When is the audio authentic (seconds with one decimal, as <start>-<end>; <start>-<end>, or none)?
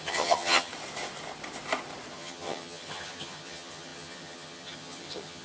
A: 0.7-2.1